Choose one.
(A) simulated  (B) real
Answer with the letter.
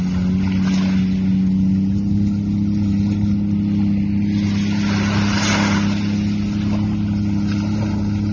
B